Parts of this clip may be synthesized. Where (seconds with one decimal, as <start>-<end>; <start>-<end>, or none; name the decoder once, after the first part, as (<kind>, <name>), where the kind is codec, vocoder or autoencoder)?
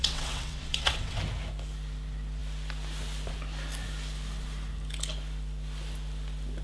0.0-1.2 (vocoder, WaveNeXt)